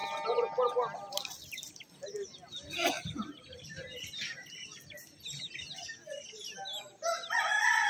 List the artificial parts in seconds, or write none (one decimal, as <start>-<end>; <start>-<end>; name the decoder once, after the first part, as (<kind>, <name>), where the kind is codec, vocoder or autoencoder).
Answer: none